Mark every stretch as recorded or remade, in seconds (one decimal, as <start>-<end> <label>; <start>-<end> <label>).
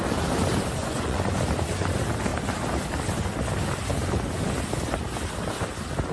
0.0-0.8 recorded; 0.8-1.4 remade; 1.4-6.1 recorded